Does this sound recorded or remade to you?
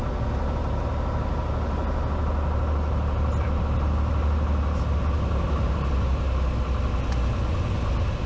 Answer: recorded